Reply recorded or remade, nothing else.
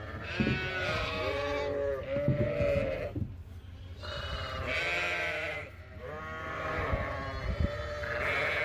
recorded